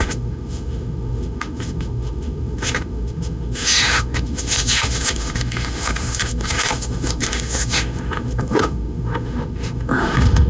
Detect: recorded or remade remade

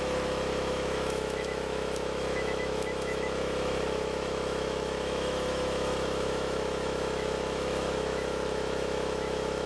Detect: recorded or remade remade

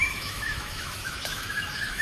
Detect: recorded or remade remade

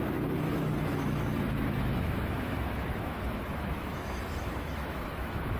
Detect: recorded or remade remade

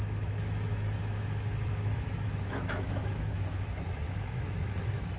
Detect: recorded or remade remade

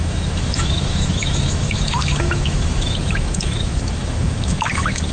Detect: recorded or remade remade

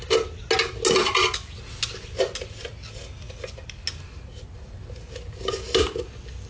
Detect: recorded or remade recorded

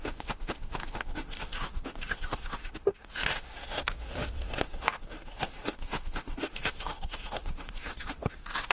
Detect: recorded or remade remade